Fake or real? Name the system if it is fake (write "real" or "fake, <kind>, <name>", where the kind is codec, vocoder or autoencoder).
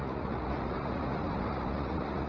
fake, vocoder, Vocos